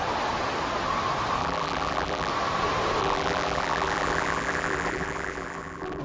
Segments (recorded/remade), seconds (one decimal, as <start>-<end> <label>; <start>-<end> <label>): 0.0-1.4 recorded; 1.4-2.3 remade; 2.3-3.0 recorded; 3.0-6.0 remade